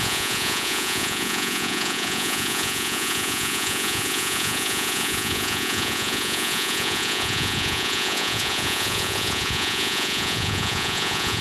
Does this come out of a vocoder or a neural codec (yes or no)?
yes